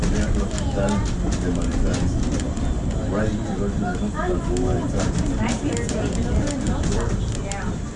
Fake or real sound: real